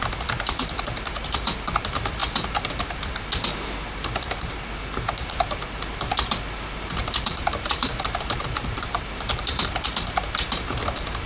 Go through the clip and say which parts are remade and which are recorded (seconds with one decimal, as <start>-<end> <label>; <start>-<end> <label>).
0.0-7.0 recorded; 7.0-9.7 remade; 9.7-11.3 recorded